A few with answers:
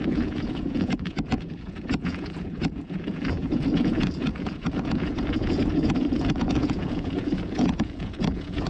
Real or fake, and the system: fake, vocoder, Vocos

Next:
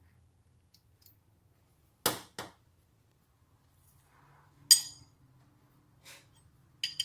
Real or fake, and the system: real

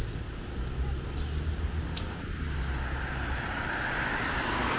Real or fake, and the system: real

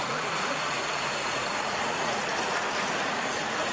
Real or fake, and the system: fake, vocoder, Vocos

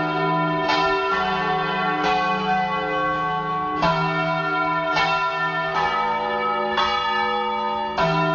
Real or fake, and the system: real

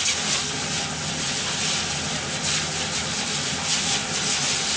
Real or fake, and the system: real